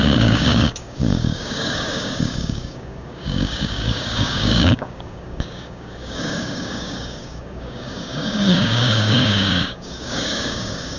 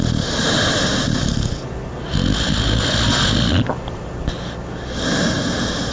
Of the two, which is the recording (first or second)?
second